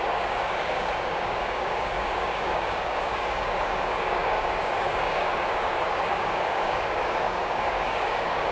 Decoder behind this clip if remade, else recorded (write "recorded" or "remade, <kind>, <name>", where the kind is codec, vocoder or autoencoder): remade, codec, DAC